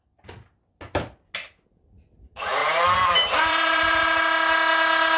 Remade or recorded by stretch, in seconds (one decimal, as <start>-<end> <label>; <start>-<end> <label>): 0.0-2.6 recorded; 2.6-4.0 remade; 4.0-5.2 recorded